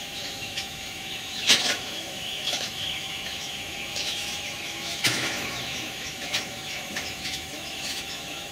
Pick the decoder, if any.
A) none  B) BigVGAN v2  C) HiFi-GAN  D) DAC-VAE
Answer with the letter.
D